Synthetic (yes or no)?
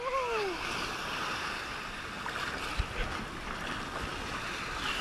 no